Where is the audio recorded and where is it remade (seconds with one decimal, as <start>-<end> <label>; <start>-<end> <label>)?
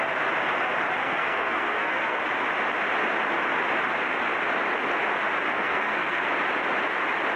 0.0-1.0 recorded; 1.0-2.2 remade; 2.2-5.5 recorded; 5.5-6.3 remade; 6.3-7.4 recorded